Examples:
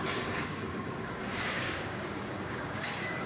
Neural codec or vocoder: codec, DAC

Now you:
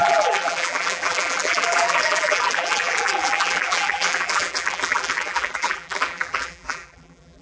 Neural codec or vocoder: vocoder, BigVGAN v2